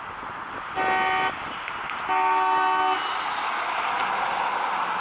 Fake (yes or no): no